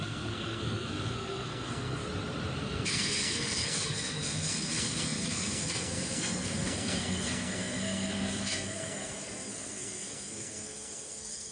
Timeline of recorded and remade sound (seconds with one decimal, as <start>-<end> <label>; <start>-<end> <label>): 0.0-2.0 remade; 2.0-2.6 recorded; 2.6-11.5 remade